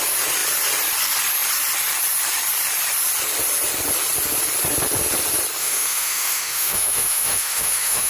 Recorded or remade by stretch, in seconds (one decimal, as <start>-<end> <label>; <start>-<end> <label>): 0.0-5.6 recorded; 5.6-8.1 remade